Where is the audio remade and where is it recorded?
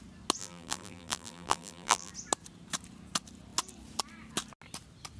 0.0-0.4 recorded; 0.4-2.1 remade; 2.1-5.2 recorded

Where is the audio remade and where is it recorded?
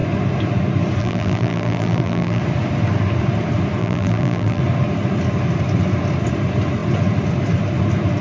0.0-1.0 recorded; 1.0-2.4 remade; 2.4-3.8 recorded; 3.8-4.6 remade; 4.6-8.2 recorded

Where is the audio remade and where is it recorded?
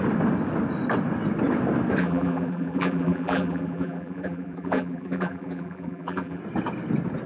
0.0-2.0 recorded; 2.0-6.4 remade; 6.4-7.3 recorded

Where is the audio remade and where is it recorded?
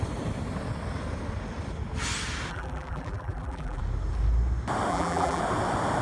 0.0-2.5 recorded; 2.5-3.8 remade; 3.8-4.9 recorded; 4.9-5.4 remade; 5.4-6.0 recorded